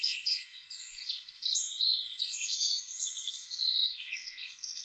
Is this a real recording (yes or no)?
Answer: no